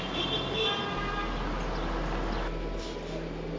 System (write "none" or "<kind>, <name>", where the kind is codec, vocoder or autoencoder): none